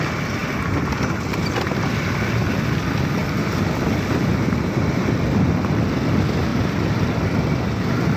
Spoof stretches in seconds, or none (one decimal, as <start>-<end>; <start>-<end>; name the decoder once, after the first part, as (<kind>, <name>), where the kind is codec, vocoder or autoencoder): none